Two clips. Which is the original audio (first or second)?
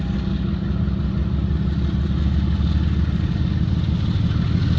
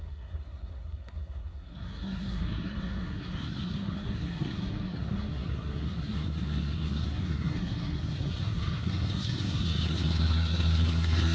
first